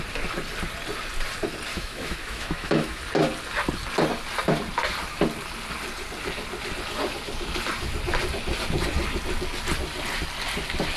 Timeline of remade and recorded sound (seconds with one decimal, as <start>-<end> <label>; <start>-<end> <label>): 0.0-1.7 recorded; 1.7-3.0 remade; 3.0-11.0 recorded